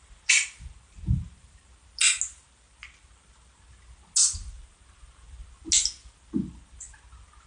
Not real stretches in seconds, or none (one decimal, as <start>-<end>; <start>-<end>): none